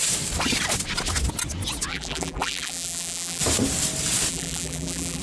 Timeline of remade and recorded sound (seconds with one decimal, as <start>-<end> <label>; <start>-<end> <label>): 0.0-1.9 recorded; 1.9-3.4 remade; 3.4-4.3 recorded; 4.3-5.2 remade